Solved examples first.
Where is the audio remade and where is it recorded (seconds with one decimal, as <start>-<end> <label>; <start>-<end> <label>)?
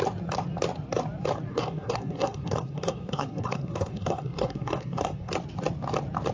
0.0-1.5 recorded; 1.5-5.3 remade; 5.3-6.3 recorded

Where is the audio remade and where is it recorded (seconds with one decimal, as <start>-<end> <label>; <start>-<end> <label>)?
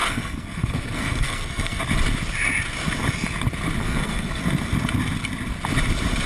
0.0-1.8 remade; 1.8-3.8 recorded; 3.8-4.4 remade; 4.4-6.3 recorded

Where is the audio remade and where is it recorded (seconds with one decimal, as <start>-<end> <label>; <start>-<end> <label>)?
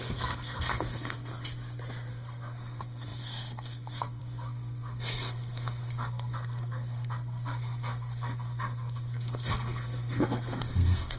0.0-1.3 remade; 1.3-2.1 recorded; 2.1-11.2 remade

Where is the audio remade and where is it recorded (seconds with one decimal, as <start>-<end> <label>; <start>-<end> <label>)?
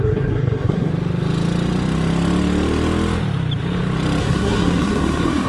0.0-0.9 remade; 0.9-4.2 recorded; 4.2-5.5 remade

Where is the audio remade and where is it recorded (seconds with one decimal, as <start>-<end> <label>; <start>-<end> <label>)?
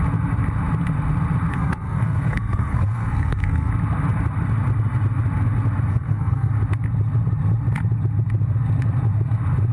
0.0-1.5 recorded; 1.5-3.7 remade; 3.7-5.9 recorded; 5.9-6.5 remade; 6.5-9.7 recorded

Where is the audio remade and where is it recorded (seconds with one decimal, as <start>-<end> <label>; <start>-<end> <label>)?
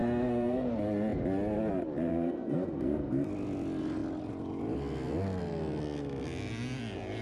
0.0-0.7 remade; 0.7-2.1 recorded; 2.1-3.3 remade; 3.3-7.2 recorded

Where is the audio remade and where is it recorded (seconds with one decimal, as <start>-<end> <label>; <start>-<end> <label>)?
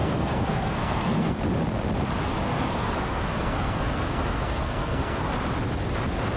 0.0-1.4 remade; 1.4-2.5 recorded; 2.5-5.2 remade; 5.2-6.4 recorded